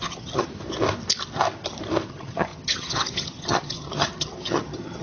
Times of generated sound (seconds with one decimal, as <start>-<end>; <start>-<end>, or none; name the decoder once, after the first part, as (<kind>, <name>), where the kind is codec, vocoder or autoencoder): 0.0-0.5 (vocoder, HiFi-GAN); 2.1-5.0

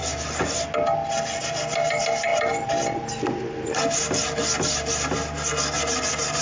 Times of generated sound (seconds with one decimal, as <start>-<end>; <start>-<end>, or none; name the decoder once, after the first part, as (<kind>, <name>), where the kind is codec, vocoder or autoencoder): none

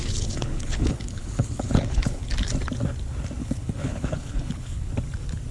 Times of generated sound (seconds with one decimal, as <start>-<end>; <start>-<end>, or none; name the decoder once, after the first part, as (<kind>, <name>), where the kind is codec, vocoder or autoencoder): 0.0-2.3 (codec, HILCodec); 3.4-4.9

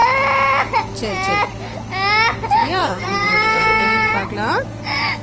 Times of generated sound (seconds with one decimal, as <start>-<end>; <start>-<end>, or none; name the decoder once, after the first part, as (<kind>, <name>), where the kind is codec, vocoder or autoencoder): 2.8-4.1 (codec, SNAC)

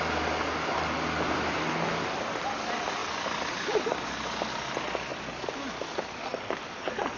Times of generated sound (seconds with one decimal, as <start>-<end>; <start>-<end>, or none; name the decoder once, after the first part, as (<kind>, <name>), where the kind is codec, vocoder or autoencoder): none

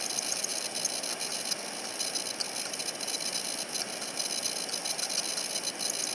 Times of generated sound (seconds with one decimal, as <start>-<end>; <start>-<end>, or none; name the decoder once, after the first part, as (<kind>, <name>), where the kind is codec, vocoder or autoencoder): none